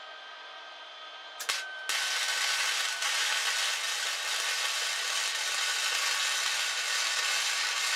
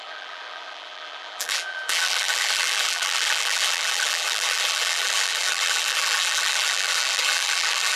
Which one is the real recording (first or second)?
first